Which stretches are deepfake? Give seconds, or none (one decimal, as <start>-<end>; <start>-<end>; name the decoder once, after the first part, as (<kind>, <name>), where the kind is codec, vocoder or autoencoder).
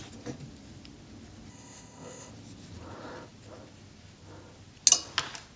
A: 1.5-2.3 (codec, ZipCodec)